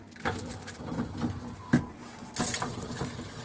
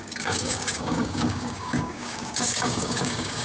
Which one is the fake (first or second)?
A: second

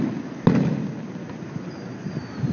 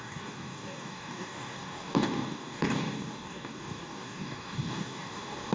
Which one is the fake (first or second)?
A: second